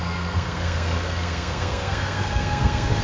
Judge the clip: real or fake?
fake